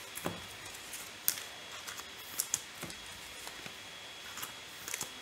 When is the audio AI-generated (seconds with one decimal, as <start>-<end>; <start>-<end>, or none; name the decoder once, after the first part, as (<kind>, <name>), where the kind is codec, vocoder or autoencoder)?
none